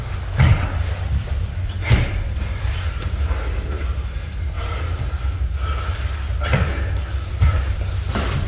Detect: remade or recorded recorded